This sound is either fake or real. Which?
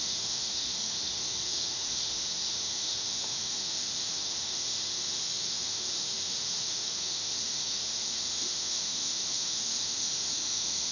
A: fake